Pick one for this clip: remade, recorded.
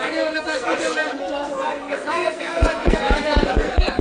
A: remade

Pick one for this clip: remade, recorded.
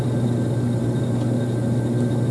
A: recorded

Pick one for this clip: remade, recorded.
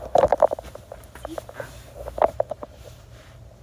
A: recorded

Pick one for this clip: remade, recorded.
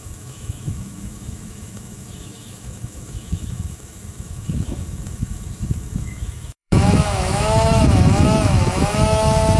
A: remade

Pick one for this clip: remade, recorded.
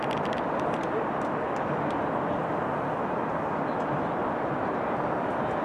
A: recorded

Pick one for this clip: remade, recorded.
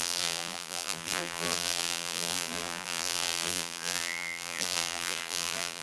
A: remade